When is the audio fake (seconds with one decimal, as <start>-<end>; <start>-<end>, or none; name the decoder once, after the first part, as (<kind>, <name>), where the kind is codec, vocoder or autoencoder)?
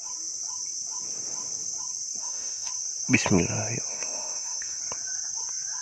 2.2-2.7 (autoencoder, DAC-VAE); 3.9-4.8